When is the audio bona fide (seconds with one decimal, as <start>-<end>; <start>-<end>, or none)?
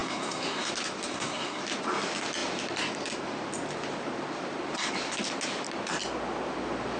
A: 0.7-1.1; 1.6-7.0